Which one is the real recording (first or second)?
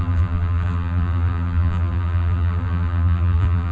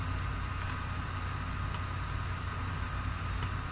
second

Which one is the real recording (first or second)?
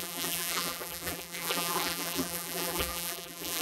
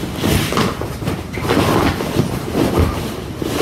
second